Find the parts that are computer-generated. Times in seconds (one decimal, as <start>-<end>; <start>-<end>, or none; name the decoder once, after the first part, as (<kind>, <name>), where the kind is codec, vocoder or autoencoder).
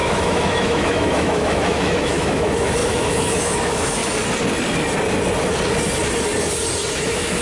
0.0-4.0 (autoencoder, DAC-VAE); 6.9-7.4